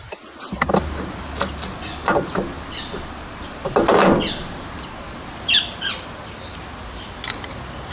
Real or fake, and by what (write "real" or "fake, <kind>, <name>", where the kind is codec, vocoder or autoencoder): real